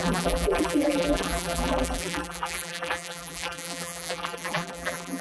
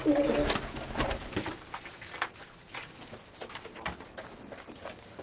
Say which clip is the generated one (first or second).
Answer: first